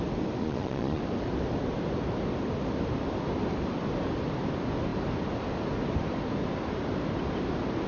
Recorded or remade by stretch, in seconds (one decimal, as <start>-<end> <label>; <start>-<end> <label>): 0.0-0.4 recorded; 0.4-1.0 remade; 1.0-7.9 recorded